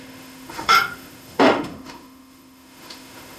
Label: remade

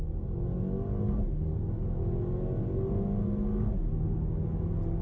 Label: recorded